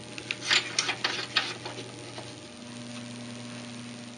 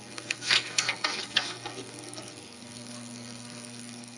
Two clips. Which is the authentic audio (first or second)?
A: first